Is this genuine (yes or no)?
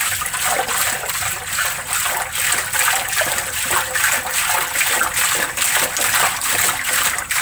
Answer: yes